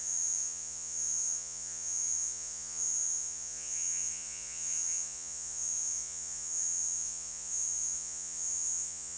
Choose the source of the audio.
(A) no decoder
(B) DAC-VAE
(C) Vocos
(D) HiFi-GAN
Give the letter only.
C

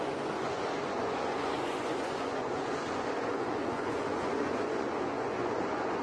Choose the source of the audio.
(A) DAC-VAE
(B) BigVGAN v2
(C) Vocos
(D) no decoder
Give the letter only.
C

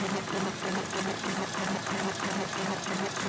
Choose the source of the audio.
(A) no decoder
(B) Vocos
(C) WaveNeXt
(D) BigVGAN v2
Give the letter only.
A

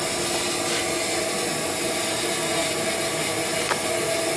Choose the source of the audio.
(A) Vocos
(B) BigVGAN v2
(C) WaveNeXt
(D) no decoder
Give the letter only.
D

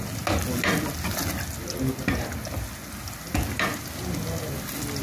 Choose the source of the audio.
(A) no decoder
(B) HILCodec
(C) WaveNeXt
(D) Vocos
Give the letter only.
A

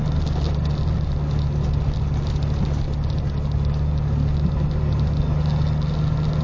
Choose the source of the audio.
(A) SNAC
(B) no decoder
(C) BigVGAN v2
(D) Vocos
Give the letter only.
B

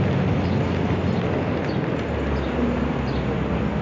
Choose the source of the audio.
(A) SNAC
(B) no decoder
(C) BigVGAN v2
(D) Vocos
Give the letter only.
B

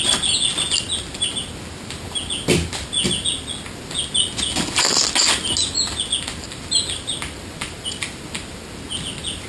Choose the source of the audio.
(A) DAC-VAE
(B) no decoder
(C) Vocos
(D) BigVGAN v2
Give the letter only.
B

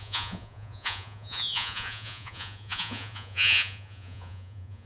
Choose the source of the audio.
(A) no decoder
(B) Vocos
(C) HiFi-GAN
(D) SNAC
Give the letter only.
B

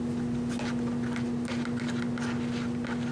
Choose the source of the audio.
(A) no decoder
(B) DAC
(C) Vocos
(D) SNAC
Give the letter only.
A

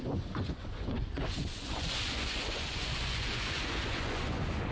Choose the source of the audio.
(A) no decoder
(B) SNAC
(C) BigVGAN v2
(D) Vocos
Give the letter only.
D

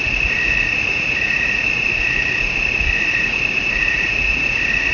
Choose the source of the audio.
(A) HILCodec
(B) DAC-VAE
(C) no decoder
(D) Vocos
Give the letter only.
D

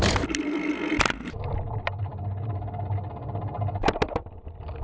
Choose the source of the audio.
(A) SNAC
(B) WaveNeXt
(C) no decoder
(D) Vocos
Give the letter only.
C